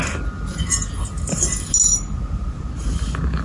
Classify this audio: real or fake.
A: real